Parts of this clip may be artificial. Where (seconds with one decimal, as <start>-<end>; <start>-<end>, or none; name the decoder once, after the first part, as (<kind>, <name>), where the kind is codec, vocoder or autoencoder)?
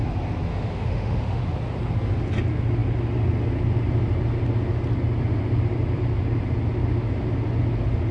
0.5-1.4 (autoencoder, DAC-VAE)